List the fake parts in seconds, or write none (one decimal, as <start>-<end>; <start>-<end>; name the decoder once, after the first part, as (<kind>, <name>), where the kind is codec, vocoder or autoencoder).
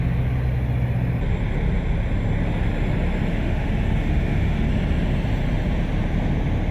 3.3-4.7 (autoencoder, DAC-VAE)